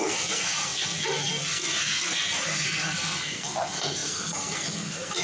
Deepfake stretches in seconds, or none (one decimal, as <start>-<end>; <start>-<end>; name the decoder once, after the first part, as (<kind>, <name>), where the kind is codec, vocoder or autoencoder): 0.0-5.2 (codec, SNAC)